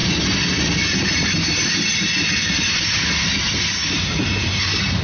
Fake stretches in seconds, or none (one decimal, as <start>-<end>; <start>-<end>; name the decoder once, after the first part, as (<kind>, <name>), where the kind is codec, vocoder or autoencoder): none